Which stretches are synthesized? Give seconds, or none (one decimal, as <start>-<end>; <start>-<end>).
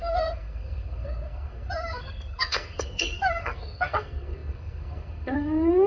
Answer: 0.0-5.9